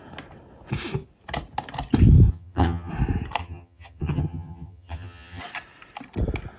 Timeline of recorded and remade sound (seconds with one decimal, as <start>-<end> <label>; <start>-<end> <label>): 0.0-2.3 recorded; 2.3-2.9 remade; 2.9-3.4 recorded; 3.4-5.4 remade; 5.4-6.6 recorded